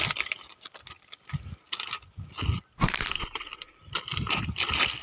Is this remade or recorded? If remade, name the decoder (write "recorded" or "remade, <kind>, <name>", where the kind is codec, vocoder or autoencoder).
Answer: recorded